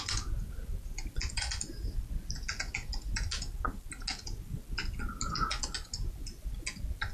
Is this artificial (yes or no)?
no